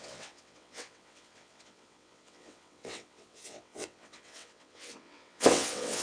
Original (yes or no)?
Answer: no